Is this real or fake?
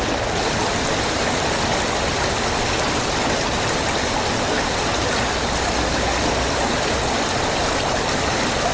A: real